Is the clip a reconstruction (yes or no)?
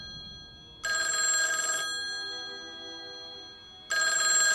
no